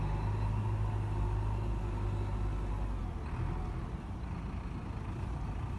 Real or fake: real